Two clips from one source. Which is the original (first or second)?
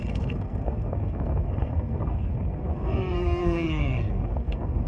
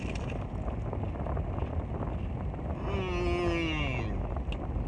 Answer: second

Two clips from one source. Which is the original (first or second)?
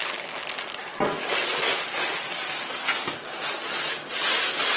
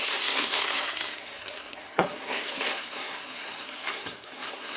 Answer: first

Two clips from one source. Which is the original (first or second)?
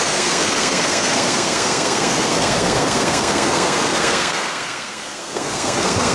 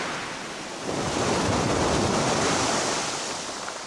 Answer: second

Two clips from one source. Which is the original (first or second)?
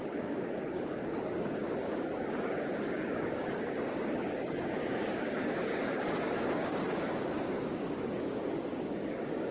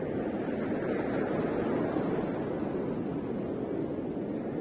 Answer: second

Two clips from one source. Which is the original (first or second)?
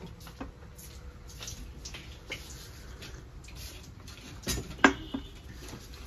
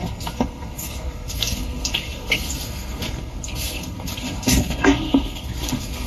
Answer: first